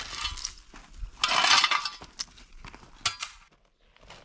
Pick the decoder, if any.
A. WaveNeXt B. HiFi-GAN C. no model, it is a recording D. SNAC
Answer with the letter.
C